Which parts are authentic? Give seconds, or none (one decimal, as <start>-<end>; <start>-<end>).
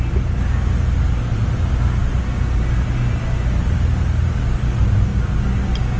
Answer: 0.0-6.0